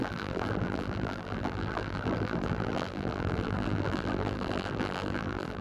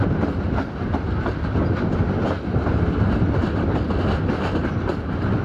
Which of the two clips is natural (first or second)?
second